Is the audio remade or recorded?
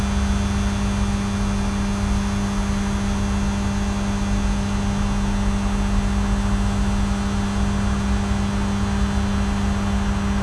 recorded